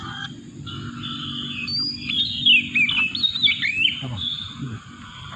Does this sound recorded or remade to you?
recorded